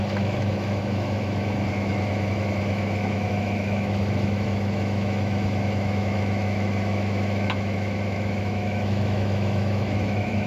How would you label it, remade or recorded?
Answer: remade